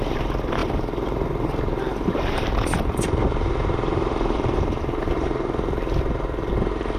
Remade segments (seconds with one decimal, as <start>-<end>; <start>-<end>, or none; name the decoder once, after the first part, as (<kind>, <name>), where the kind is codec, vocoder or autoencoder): 0.0-7.0 (vocoder, BigVGAN v2)